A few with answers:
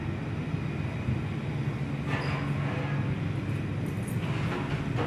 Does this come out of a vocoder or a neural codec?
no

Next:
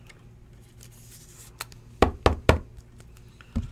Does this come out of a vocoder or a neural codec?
no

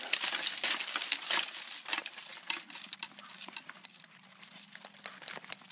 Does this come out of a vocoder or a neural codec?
no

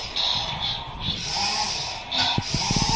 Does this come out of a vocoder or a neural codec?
no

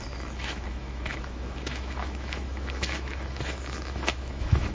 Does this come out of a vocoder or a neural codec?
yes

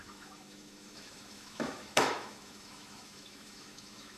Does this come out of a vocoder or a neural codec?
yes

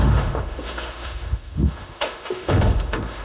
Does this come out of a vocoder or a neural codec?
yes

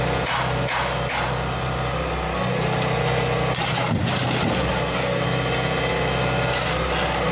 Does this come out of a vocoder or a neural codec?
no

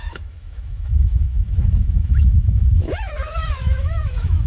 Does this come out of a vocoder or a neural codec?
yes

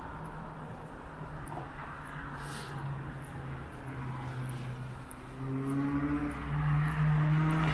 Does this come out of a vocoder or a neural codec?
no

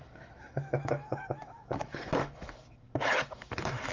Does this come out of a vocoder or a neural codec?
yes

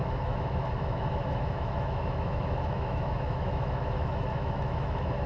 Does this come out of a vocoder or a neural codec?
yes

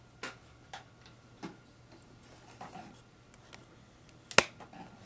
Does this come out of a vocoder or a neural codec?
no